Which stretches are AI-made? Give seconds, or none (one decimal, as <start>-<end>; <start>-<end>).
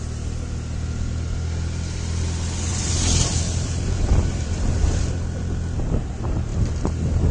2.7-5.4